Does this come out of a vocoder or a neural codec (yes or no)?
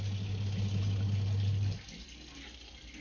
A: no